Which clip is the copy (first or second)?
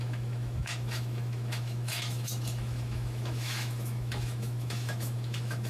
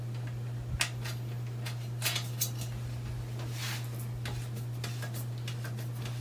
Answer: first